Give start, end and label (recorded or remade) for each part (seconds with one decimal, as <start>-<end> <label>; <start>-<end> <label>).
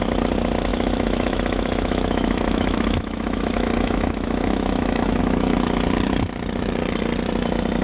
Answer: 0.0-0.7 recorded; 0.7-5.2 remade; 5.2-7.8 recorded